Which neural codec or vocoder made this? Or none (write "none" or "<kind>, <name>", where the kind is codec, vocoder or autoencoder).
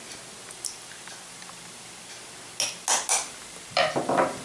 none